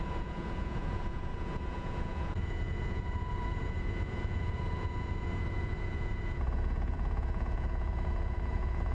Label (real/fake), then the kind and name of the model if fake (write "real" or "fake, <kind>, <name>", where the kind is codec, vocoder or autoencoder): fake, vocoder, Vocos